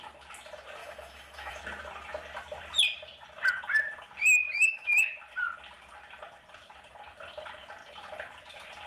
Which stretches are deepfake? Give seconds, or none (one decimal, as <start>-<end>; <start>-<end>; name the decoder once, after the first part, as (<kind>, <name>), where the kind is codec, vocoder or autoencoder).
0.8-1.6 (autoencoder, DAC-VAE); 4.5-5.1